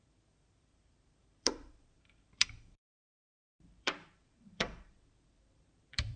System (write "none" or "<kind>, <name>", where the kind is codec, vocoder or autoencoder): vocoder, BigVGAN v2